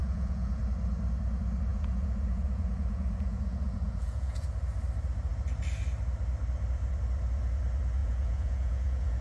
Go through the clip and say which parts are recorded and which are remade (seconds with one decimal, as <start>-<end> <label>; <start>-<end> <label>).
0.0-0.6 remade; 0.6-1.7 recorded; 1.7-4.5 remade; 4.5-8.0 recorded; 8.0-9.2 remade